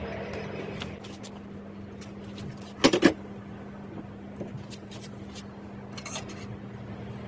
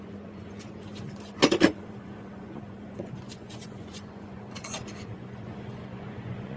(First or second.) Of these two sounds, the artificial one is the second